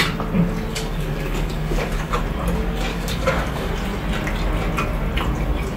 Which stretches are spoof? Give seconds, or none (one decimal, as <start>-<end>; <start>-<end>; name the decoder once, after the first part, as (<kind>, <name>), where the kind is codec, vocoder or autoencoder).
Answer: 0.7-2.2 (codec, DAC); 2.9-3.7